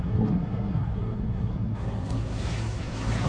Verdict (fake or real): fake